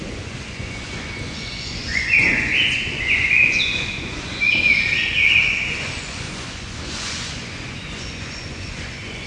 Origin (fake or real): fake